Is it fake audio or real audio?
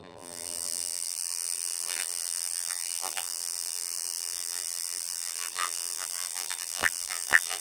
fake